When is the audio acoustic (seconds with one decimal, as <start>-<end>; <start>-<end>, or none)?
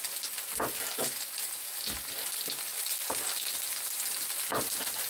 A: 0.0-5.1